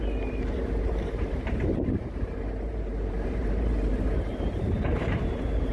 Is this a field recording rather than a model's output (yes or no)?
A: no